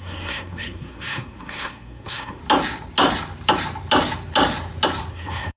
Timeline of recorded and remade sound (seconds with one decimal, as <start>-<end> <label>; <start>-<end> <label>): 0.0-2.4 remade; 2.4-5.1 recorded; 5.1-5.6 remade